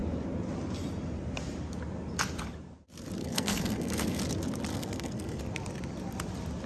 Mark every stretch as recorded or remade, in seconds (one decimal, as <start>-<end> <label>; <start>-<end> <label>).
0.0-3.2 recorded; 3.2-4.2 remade; 4.2-4.7 recorded; 4.7-5.4 remade; 5.4-6.7 recorded